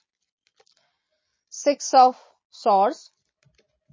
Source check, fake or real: real